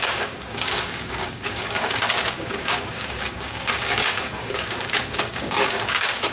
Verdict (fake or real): fake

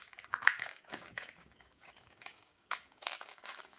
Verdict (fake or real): fake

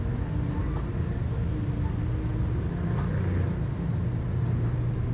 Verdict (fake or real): real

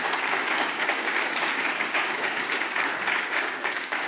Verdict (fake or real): fake